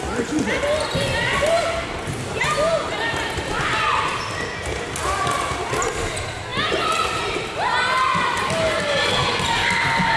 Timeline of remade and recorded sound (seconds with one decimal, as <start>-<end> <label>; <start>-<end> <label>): 0.0-10.2 recorded